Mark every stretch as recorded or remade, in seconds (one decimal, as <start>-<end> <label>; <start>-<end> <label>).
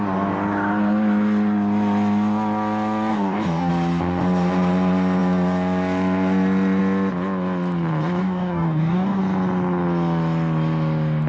0.0-3.1 recorded; 3.1-3.7 remade; 3.7-8.2 recorded; 8.2-9.2 remade; 9.2-11.3 recorded